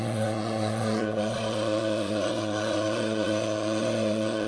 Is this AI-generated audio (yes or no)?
yes